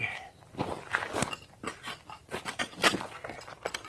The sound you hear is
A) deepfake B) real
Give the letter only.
B